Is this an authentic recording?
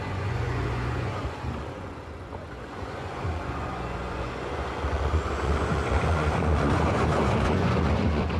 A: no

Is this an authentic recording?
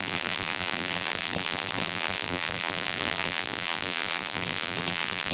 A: no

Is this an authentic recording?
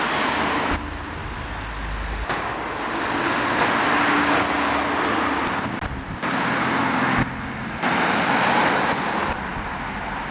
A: yes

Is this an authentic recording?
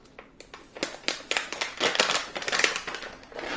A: yes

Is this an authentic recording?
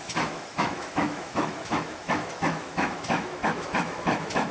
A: no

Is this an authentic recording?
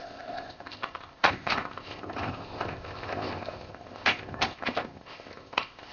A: no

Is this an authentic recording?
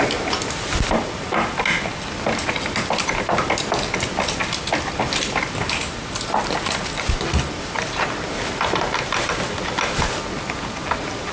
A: yes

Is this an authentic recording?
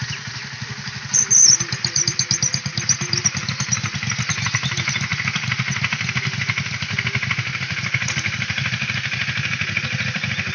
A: yes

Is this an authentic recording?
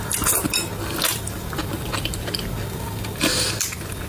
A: yes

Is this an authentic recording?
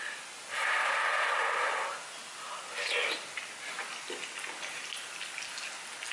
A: yes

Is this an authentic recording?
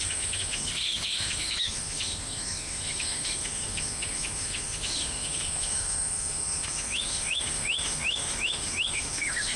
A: no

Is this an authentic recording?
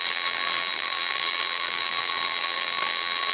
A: no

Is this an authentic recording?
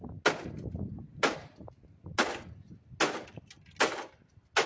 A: yes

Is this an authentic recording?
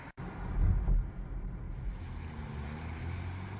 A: yes